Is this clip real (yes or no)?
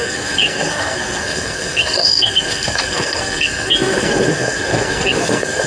no